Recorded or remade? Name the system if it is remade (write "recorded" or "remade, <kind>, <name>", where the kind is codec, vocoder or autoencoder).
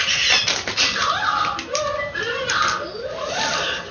recorded